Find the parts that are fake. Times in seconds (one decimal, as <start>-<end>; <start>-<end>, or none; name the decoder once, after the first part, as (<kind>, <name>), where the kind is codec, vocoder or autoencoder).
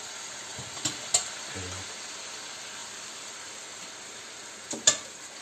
2.8-3.3 (vocoder, BigVGAN v2)